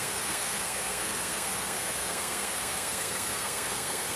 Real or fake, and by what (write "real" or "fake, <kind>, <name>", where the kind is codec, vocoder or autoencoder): fake, codec, SNAC